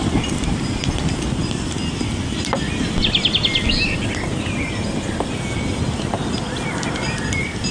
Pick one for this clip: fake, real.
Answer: real